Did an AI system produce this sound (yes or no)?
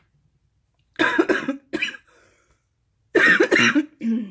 no